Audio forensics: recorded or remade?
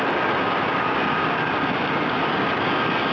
recorded